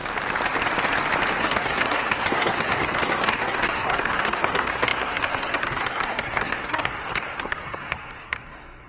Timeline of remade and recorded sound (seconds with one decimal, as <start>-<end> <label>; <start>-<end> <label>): 0.0-1.4 recorded; 1.4-8.9 remade